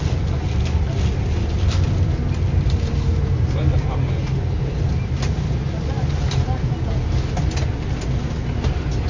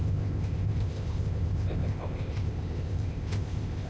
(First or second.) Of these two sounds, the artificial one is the second